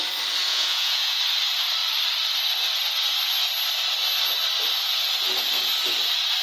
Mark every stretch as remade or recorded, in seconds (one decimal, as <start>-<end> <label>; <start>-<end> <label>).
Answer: 0.0-0.5 recorded; 0.5-1.2 remade; 1.2-6.4 recorded

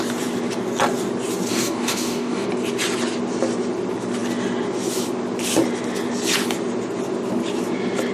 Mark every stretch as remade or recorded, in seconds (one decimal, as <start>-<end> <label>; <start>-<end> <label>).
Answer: 0.0-1.5 recorded; 1.5-2.5 remade; 2.5-8.1 recorded

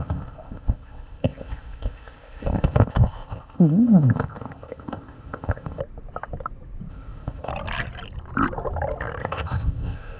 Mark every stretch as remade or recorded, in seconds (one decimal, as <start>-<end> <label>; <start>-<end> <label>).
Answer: 0.0-5.8 remade; 5.8-6.9 recorded; 6.9-7.5 remade; 7.5-9.2 recorded; 9.2-10.2 remade

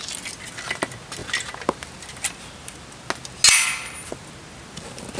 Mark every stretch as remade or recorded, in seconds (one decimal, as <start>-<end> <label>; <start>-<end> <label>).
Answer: 0.0-5.2 recorded

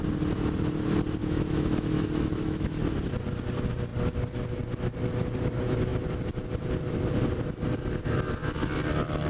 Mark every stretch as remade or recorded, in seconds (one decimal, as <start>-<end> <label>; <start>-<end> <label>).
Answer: 0.0-1.2 recorded; 1.2-2.8 remade; 2.8-9.3 recorded

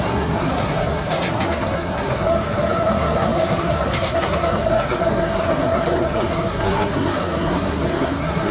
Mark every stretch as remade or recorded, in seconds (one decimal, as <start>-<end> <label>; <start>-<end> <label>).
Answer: 0.0-8.5 remade

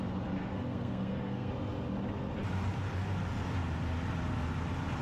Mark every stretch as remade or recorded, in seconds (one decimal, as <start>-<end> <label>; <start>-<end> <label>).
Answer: 0.0-0.4 recorded; 0.4-1.5 remade; 1.5-5.0 recorded